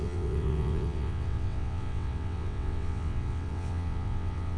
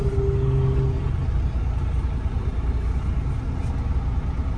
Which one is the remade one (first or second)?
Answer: first